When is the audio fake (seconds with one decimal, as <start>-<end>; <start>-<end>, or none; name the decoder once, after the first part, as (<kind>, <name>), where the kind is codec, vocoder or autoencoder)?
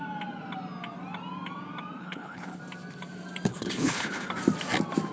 2.0-2.6 (codec, HILCodec); 3.5-4.3